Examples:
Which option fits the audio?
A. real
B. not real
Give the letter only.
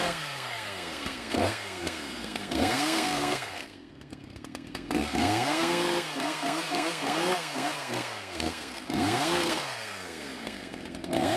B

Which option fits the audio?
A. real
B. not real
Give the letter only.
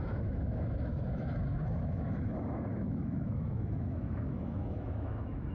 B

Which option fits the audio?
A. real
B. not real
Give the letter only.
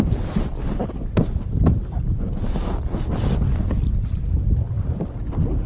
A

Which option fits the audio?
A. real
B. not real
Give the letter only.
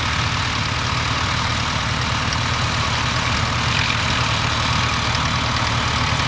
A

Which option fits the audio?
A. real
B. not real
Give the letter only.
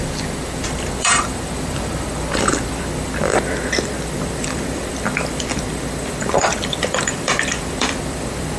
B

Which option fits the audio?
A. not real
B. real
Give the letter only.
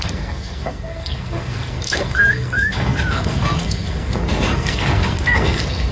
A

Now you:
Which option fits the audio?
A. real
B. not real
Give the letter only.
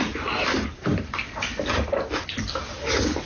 A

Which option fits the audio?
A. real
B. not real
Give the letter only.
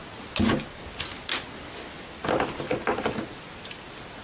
A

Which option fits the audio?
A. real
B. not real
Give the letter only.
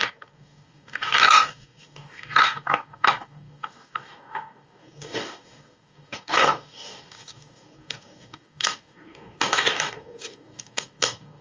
B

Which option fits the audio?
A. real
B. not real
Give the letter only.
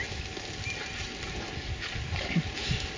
A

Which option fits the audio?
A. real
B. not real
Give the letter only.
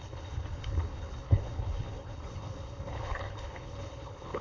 B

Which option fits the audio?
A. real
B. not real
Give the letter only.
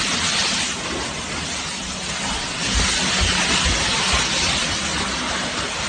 A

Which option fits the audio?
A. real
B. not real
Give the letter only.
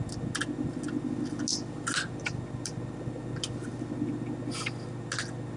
A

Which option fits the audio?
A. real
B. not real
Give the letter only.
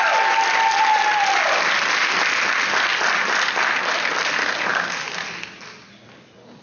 A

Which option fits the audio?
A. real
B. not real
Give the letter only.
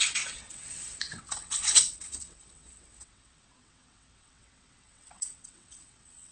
B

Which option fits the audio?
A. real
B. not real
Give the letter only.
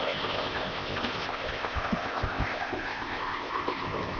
B